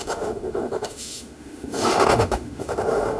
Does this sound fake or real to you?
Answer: fake